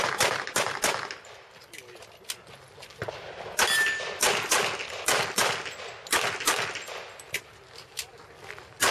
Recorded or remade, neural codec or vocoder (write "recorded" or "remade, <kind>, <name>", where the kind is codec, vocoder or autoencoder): recorded